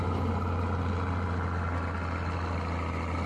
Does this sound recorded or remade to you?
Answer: recorded